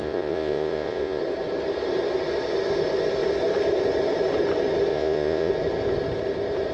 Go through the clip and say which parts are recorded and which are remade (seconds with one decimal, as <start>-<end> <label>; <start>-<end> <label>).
0.0-1.2 remade; 1.2-4.9 recorded; 4.9-5.5 remade; 5.5-6.7 recorded